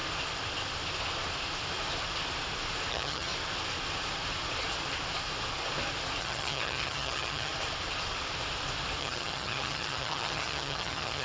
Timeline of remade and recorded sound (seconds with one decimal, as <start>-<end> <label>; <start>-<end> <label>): 0.0-2.9 recorded; 2.9-3.3 remade; 3.3-6.2 recorded; 6.2-7.5 remade; 7.5-9.0 recorded; 9.0-11.2 remade